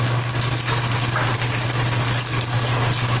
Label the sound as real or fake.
real